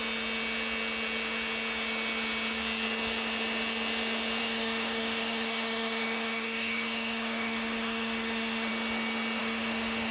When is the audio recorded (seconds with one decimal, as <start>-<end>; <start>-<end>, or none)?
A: 0.0-4.4; 8.7-9.4